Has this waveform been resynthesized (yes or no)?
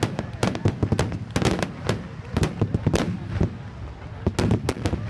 no